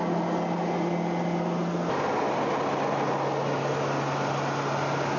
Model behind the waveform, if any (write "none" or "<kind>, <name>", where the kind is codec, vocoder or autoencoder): none